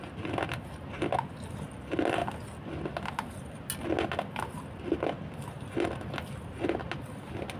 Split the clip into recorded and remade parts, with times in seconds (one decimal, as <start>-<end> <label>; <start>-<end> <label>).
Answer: 0.0-7.6 recorded